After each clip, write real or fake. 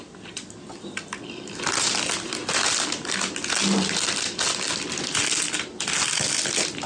real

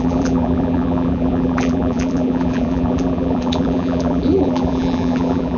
fake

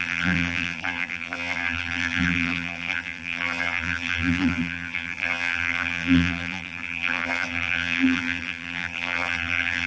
fake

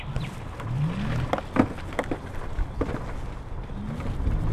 real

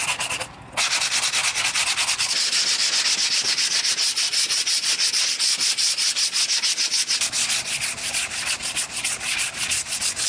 real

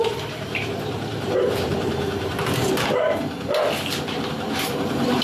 fake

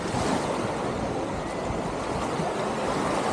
real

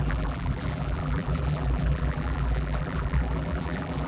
fake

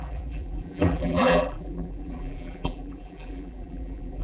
fake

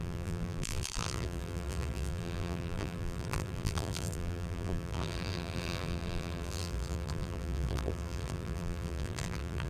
fake